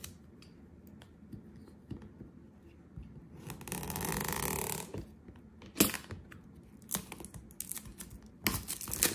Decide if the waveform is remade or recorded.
recorded